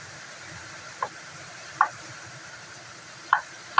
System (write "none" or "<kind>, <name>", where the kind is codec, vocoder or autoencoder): vocoder, BigVGAN v2